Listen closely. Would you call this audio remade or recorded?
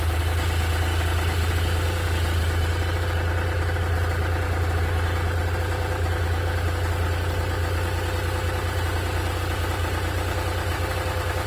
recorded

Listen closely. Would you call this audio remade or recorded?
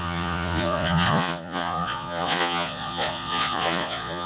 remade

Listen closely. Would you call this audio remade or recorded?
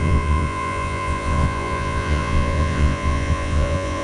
remade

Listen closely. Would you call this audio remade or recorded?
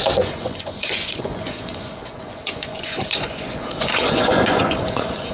remade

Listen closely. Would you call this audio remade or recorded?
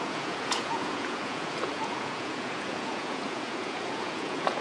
remade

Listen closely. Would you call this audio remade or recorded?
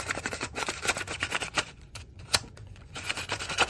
remade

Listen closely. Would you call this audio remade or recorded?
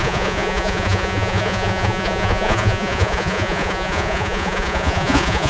remade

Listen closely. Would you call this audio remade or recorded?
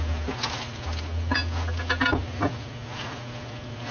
recorded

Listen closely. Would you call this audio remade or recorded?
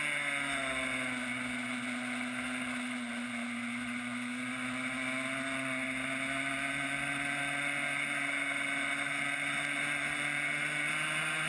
recorded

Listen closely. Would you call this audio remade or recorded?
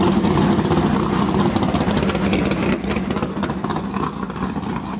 recorded